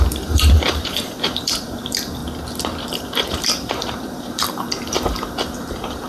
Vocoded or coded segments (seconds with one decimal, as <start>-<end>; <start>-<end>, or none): 0.0-2.2; 3.0-6.1